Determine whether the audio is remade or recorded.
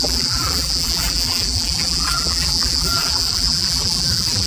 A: remade